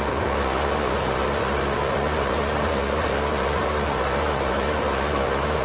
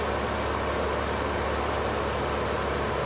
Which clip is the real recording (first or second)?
second